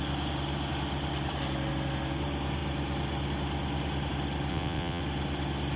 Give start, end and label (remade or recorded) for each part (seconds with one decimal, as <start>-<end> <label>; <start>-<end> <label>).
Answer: 0.0-4.5 recorded; 4.5-5.0 remade; 5.0-5.8 recorded